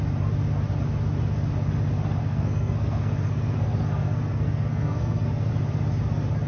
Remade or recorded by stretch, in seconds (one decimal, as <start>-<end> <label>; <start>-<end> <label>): 0.0-2.2 recorded; 2.2-5.5 remade; 5.5-6.5 recorded